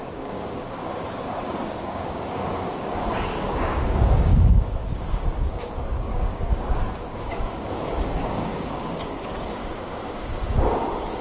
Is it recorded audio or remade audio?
remade